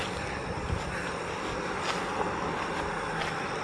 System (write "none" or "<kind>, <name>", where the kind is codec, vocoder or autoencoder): none